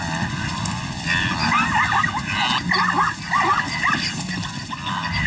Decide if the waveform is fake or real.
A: real